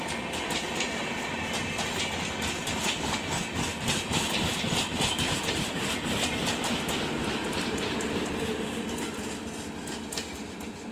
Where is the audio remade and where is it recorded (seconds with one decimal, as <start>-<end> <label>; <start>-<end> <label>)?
0.0-3.7 recorded; 3.7-8.6 remade; 8.6-10.9 recorded